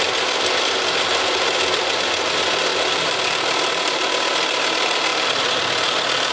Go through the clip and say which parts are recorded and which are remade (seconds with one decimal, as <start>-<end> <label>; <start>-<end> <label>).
0.0-2.7 recorded; 2.7-4.0 remade; 4.0-5.1 recorded; 5.1-6.3 remade